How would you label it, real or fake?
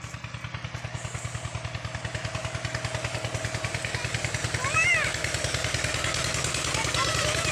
real